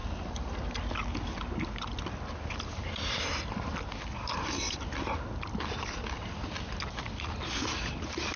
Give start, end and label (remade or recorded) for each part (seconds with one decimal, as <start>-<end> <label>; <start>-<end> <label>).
0.0-0.6 remade; 0.6-8.4 recorded